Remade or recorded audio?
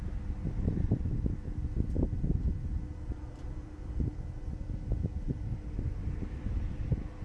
recorded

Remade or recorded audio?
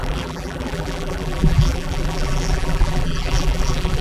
remade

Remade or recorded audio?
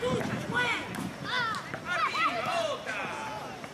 recorded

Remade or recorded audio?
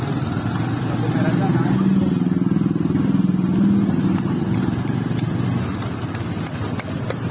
recorded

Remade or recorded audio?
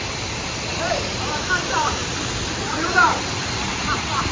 remade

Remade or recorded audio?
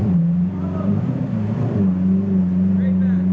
remade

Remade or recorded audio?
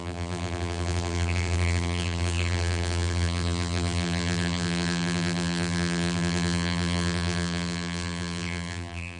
remade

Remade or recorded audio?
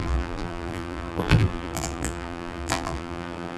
remade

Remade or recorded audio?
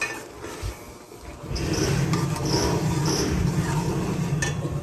recorded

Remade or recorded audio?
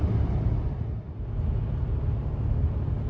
recorded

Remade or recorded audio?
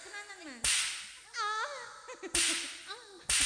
recorded